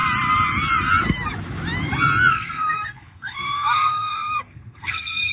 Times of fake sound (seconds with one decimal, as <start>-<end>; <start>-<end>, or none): 2.3-5.3